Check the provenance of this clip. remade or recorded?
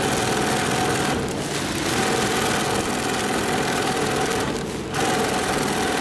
recorded